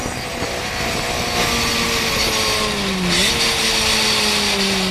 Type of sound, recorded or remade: recorded